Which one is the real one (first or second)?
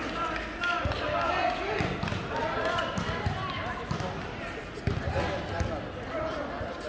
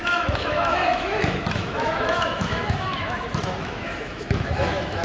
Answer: first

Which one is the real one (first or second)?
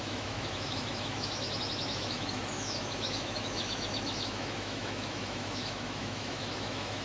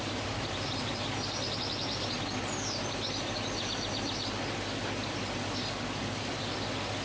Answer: second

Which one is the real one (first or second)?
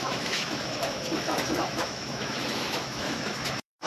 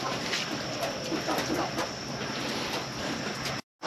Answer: second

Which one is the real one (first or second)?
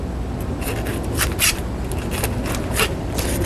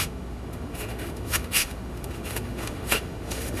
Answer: first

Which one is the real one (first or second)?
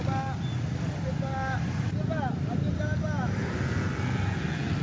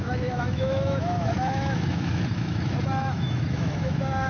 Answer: first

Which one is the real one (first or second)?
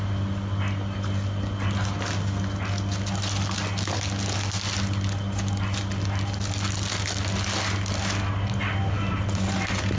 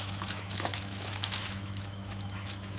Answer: first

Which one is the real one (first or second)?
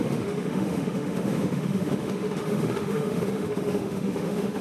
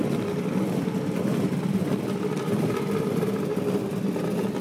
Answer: second